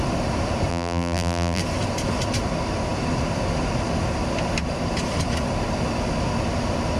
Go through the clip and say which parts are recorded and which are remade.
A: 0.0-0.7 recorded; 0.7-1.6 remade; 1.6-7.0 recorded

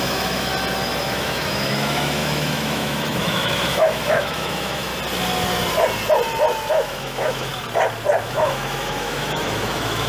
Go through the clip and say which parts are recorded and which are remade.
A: 0.0-0.5 remade; 0.5-1.0 recorded; 1.0-4.9 remade; 4.9-6.7 recorded; 6.7-7.5 remade; 7.5-8.2 recorded; 8.2-10.1 remade

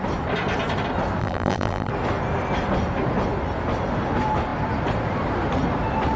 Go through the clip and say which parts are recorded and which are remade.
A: 0.0-1.2 recorded; 1.2-1.9 remade; 1.9-6.2 recorded